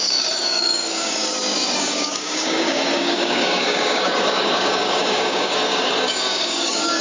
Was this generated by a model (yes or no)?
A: yes